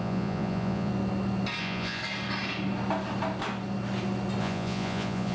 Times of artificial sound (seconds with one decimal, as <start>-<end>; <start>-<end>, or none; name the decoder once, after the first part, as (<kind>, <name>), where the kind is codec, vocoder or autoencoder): 0.0-0.9 (vocoder, Vocos); 1.6-2.0; 4.4-5.3